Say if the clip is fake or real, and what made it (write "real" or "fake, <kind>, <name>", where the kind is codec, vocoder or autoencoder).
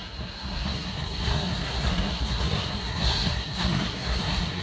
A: fake, codec, SNAC